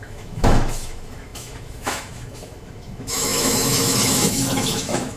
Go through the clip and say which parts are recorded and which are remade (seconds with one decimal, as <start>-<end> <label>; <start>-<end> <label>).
0.0-5.2 remade